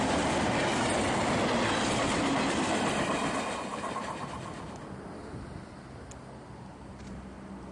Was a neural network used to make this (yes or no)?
no